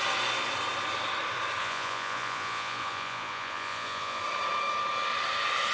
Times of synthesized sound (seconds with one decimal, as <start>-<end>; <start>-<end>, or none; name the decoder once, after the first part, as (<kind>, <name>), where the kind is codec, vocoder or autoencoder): 1.6-4.2 (vocoder, Vocos)